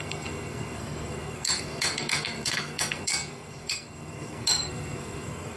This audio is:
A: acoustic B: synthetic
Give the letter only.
B